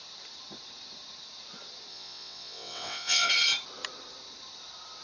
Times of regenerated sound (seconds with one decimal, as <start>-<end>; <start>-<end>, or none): 1.9-3.3